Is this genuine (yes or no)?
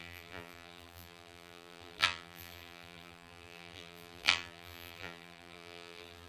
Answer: no